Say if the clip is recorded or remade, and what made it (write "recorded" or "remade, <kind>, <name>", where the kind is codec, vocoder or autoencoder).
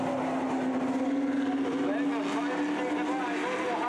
recorded